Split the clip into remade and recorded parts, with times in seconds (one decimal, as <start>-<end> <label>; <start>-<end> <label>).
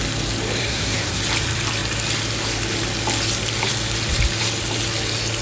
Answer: 0.0-0.6 recorded; 0.6-1.2 remade; 1.2-5.4 recorded